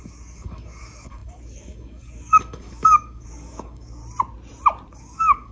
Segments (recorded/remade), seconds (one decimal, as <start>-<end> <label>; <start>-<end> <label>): 0.0-4.0 remade; 4.0-5.0 recorded; 5.0-5.5 remade